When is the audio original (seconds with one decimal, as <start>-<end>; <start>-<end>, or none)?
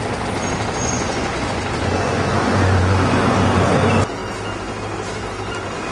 0.0-0.8; 3.7-5.9